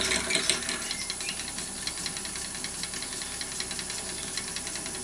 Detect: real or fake real